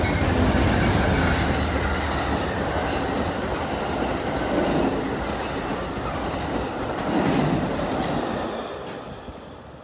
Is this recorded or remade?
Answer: recorded